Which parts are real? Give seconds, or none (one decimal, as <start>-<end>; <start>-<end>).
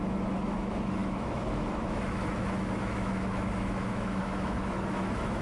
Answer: none